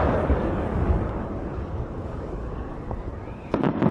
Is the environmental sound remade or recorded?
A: remade